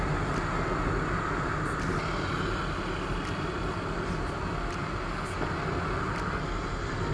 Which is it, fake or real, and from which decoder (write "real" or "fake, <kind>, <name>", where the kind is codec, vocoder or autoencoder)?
real